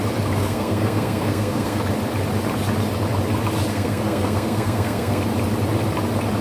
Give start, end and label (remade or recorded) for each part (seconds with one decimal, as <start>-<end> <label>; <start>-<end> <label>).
0.0-0.4 recorded; 0.4-1.8 remade; 1.8-3.7 recorded; 3.7-5.2 remade; 5.2-6.4 recorded